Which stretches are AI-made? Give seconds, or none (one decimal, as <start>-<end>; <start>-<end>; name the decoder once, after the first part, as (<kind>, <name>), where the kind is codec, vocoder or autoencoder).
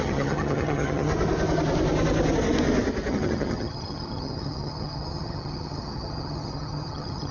0.0-1.1 (vocoder, HiFi-GAN); 3.1-7.3